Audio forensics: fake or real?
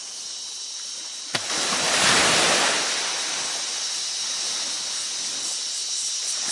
real